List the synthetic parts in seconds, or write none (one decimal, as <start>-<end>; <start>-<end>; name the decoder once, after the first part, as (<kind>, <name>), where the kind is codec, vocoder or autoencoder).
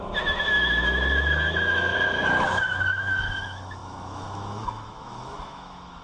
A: 0.0-1.9 (autoencoder, DAC-VAE); 2.6-6.0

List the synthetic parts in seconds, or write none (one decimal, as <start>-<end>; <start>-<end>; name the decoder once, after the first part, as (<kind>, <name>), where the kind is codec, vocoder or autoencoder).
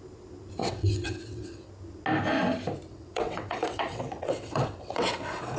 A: 0.6-1.7 (vocoder, WaveNeXt); 2.9-5.6